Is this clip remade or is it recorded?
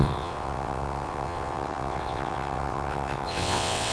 remade